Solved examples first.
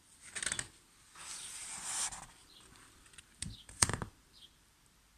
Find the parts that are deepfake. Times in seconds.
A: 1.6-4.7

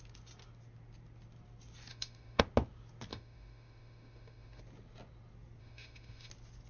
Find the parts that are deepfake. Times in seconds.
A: 1.9-2.4; 3.1-4.6; 5.6-6.3

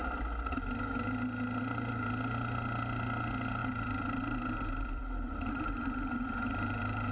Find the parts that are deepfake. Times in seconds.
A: 3.6-7.1